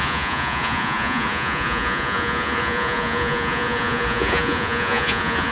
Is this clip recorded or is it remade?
remade